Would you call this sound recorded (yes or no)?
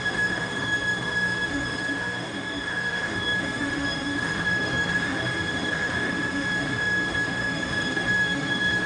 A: no